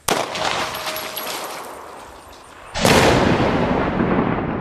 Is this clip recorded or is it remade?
recorded